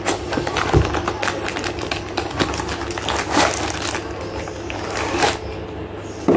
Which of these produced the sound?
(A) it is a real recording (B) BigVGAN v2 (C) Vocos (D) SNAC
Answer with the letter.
A